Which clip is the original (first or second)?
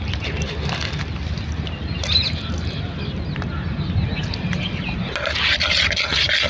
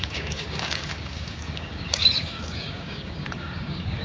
first